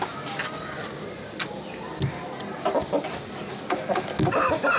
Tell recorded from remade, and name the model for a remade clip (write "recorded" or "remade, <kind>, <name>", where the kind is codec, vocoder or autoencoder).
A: recorded